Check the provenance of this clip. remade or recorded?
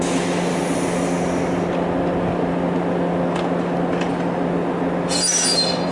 recorded